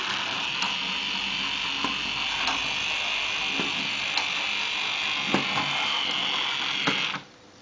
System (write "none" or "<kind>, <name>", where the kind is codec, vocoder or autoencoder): none